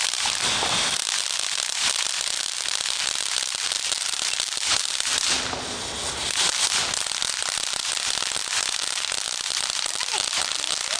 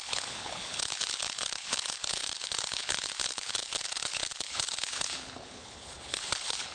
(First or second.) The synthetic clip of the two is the second